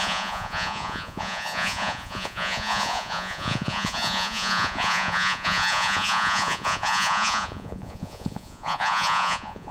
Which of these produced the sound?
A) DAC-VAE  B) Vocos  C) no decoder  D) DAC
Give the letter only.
B